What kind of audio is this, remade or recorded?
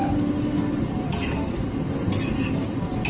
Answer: recorded